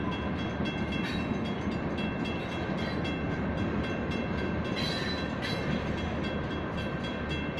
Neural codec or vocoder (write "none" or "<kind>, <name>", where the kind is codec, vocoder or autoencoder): none